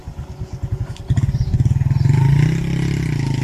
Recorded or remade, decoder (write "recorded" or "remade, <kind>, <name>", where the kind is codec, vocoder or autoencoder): recorded